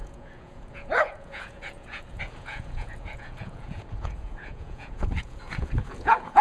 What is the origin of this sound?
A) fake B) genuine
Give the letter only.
A